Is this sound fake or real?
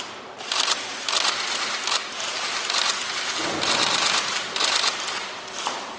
real